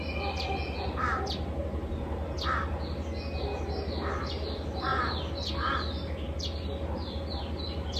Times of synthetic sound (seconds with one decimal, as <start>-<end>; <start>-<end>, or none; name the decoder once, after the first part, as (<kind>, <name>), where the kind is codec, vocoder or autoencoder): none